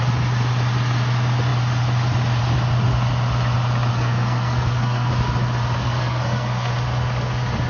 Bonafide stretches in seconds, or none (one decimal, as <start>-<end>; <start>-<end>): 0.0-3.9; 5.1-5.8; 6.7-7.7